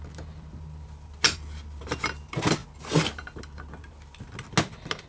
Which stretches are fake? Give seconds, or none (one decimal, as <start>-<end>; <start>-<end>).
none